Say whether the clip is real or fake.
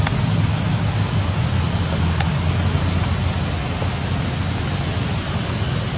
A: real